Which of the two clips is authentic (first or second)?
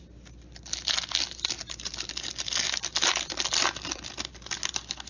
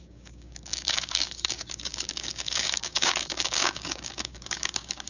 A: first